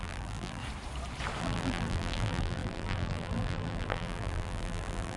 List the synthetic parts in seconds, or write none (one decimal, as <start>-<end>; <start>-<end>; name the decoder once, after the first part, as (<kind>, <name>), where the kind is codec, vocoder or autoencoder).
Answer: 0.0-0.6 (vocoder, BigVGAN v2); 1.4-5.2